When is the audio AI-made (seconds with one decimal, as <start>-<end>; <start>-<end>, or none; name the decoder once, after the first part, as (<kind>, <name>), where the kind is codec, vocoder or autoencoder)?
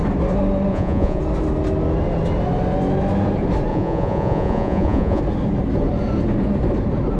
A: 0.7-1.2 (vocoder, Vocos); 3.7-5.2